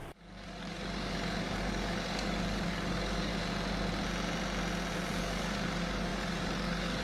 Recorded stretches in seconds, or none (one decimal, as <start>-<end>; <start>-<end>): 3.3-5.2